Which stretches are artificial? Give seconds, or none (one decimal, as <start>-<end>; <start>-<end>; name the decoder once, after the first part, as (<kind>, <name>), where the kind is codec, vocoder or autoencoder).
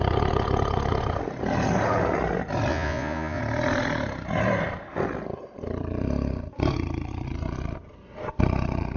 2.7-3.4 (vocoder, Vocos)